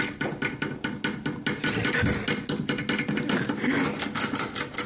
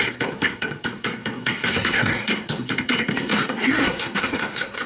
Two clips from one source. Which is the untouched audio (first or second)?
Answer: first